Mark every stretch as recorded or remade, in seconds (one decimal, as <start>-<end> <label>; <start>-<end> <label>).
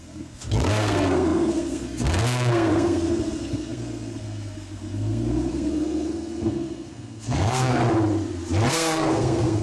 0.0-7.8 remade; 7.8-8.7 recorded; 8.7-9.6 remade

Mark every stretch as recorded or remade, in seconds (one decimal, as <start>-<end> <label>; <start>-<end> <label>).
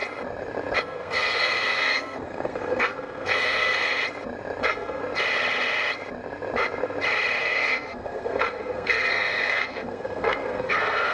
0.0-0.8 recorded; 0.8-4.0 remade; 4.0-4.6 recorded; 4.6-5.0 remade; 5.0-7.4 recorded; 7.4-11.1 remade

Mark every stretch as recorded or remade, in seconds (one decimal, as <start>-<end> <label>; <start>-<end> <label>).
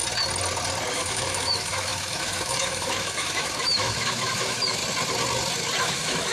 0.0-0.9 recorded; 0.9-4.8 remade; 4.8-5.8 recorded; 5.8-6.3 remade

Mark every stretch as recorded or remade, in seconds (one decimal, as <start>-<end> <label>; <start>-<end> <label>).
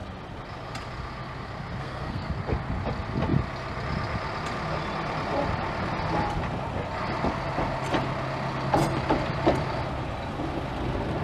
0.0-1.8 recorded; 1.8-2.3 remade; 2.3-11.2 recorded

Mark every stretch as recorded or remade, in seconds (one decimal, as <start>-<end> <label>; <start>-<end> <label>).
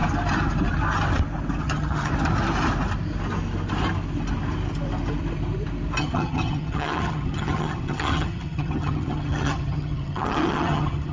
0.0-1.6 recorded; 1.6-2.1 remade; 2.1-6.0 recorded; 6.0-11.1 remade